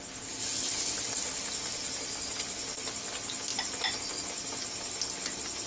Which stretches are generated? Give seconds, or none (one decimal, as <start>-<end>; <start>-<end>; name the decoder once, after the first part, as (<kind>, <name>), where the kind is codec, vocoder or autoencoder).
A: none